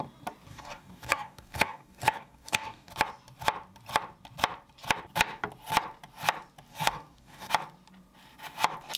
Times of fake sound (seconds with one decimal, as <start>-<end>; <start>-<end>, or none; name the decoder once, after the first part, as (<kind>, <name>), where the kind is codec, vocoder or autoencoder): 0.5-2.9 (codec, DAC); 6.7-7.5